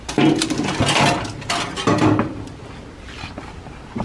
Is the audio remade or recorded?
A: recorded